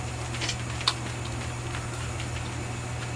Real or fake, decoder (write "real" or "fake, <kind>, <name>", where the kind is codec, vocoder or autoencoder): real